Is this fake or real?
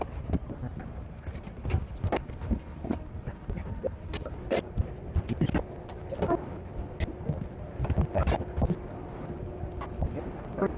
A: real